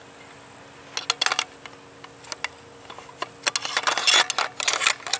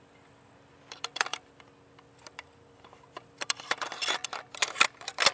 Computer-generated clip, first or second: second